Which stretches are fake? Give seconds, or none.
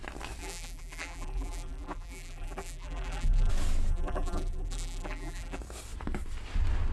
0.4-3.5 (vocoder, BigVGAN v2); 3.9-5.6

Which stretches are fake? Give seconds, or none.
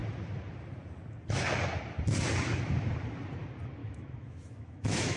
3.8-5.2 (autoencoder, DAC-VAE)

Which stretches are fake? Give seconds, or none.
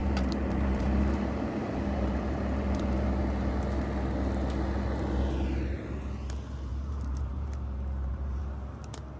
0.0-3.2 (vocoder, BigVGAN v2); 6.7-8.4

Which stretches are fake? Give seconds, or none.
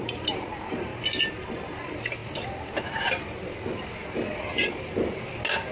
0.0-0.9 (vocoder, BigVGAN v2); 1.5-2.2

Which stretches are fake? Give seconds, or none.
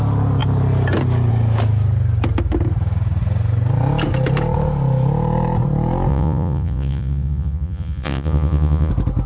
6.1-8.9 (vocoder, Vocos)